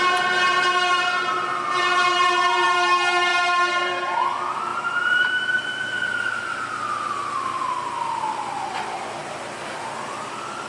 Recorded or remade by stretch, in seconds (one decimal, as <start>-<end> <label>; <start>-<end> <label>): 0.0-4.7 recorded; 4.7-5.9 remade; 5.9-10.7 recorded